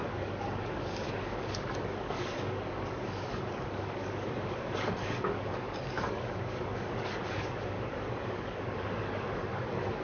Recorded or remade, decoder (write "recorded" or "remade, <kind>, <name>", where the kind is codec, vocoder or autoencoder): remade, codec, DAC